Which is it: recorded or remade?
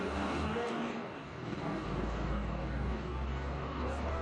remade